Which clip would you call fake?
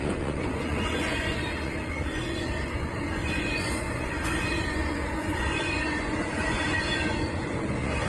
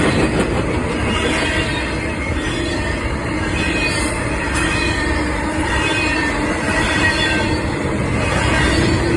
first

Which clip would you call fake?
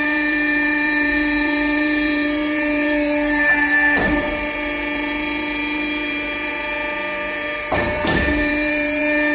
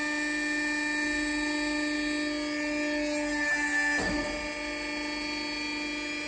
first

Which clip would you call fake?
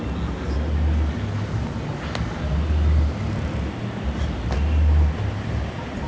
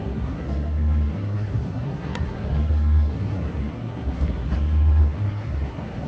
second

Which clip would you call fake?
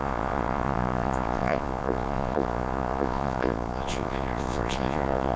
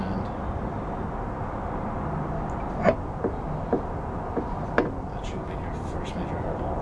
first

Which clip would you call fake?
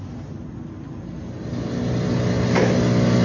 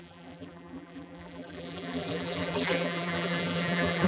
second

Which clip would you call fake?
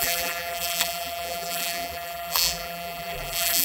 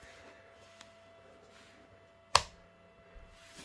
first